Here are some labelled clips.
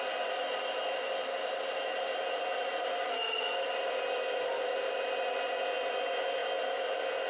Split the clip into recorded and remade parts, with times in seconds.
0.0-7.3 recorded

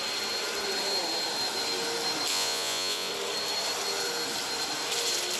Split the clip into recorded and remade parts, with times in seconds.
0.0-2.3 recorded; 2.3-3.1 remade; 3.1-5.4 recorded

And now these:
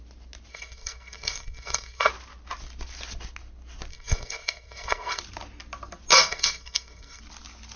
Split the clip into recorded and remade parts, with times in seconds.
0.0-0.5 recorded; 0.5-2.1 remade; 2.1-3.9 recorded; 3.9-5.2 remade; 5.2-6.1 recorded; 6.1-7.2 remade; 7.2-7.8 recorded

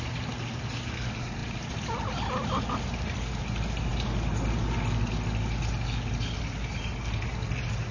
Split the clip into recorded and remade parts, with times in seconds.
0.0-7.9 recorded

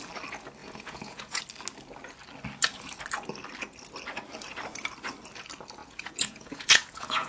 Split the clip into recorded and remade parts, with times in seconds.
0.0-0.6 recorded; 0.6-1.4 remade; 1.4-5.8 recorded; 5.8-7.3 remade

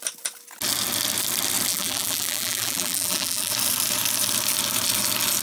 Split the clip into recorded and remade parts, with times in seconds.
0.0-1.7 recorded; 1.7-3.5 remade; 3.5-5.4 recorded